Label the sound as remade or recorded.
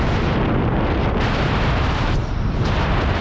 remade